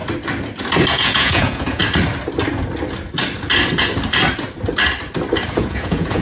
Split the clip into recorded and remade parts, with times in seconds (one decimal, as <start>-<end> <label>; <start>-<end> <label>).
0.0-0.9 recorded; 0.9-1.8 remade; 1.8-5.5 recorded; 5.5-6.2 remade